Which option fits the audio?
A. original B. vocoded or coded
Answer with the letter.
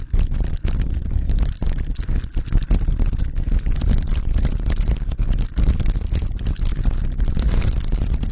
A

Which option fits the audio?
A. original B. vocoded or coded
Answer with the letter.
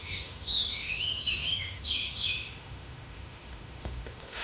B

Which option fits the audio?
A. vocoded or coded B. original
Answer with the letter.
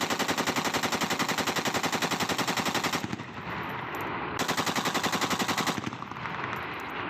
B